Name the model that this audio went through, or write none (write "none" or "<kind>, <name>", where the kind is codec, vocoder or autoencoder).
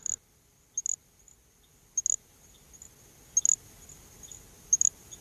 none